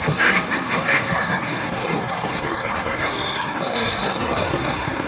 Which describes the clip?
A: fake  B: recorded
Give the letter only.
A